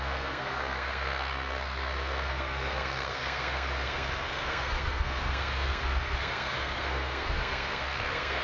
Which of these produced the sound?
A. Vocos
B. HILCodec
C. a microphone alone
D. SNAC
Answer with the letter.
D